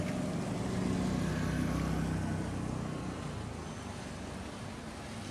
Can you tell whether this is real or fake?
real